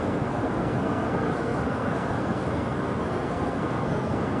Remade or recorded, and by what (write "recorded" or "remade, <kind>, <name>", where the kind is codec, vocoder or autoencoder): remade, codec, SNAC